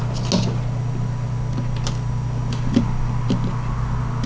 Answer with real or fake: real